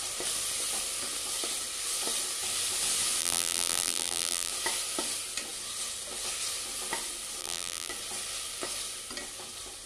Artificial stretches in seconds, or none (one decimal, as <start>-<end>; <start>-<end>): 3.2-4.5; 7.4-7.9